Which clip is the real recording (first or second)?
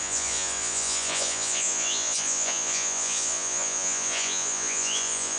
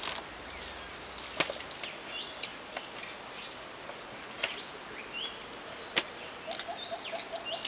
second